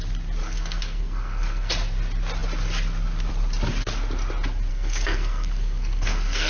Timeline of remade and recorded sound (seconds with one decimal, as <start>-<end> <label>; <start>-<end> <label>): 0.0-0.4 recorded; 0.4-1.7 remade; 1.7-4.7 recorded; 4.7-6.5 remade